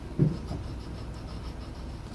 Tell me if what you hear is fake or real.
real